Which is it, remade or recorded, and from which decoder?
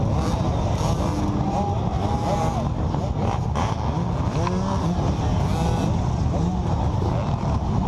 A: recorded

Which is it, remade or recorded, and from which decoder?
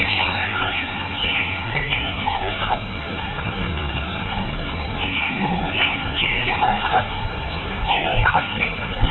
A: remade, codec, SNAC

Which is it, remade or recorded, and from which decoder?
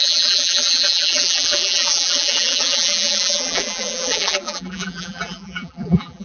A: remade, vocoder, BigVGAN v2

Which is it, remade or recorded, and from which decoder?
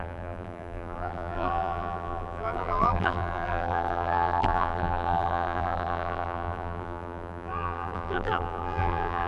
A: remade, vocoder, BigVGAN v2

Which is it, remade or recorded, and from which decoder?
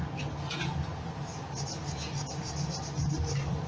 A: recorded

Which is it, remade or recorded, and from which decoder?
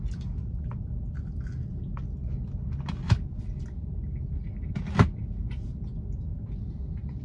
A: recorded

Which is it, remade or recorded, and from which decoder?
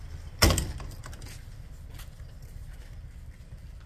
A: recorded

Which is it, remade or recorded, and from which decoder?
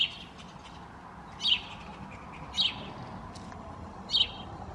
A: recorded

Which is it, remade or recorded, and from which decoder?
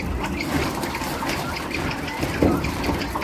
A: recorded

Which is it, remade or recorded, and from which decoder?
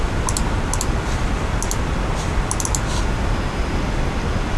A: recorded